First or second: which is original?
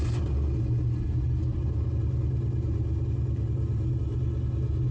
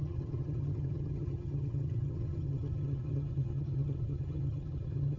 first